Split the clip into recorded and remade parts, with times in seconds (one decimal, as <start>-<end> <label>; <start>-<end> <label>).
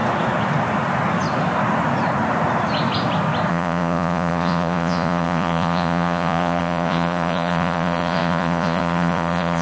0.0-3.5 recorded; 3.5-9.6 remade